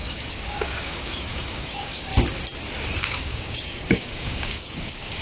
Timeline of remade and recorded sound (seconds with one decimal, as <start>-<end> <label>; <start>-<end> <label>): 0.0-2.1 remade; 2.1-3.0 recorded; 3.0-5.2 remade